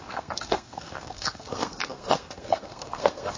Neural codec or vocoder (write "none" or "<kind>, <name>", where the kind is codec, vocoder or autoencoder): codec, SNAC